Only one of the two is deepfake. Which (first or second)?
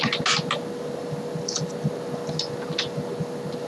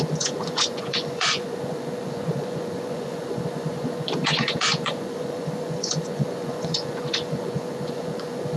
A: second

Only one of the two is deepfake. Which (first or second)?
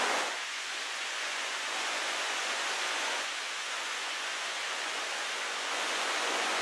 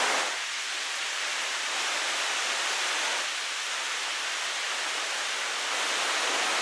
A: first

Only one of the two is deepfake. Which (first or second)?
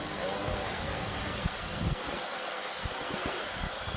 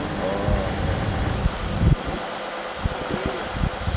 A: first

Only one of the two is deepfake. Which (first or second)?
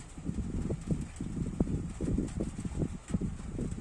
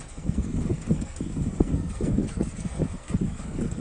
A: second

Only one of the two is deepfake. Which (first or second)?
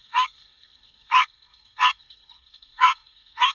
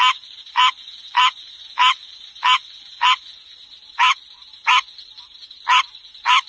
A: first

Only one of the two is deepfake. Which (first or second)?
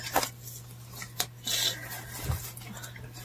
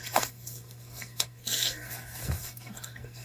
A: second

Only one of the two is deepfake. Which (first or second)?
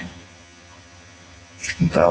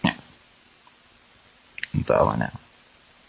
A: first